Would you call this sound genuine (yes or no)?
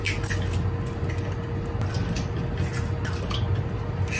yes